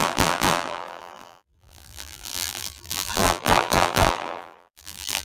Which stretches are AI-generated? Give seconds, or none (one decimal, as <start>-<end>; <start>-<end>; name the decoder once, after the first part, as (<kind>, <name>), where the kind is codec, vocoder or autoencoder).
0.0-5.2 (vocoder, BigVGAN v2)